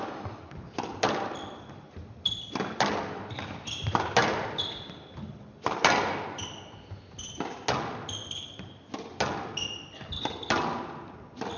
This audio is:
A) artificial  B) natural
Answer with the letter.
B